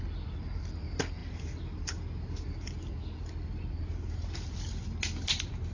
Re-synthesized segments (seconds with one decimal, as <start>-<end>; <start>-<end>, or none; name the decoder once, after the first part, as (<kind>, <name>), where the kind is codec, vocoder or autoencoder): none